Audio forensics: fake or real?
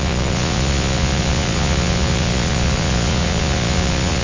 fake